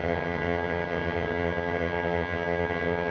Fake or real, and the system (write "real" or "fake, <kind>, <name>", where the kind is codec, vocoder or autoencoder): fake, vocoder, HiFi-GAN